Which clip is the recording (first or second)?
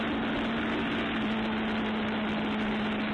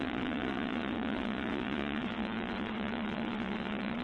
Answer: first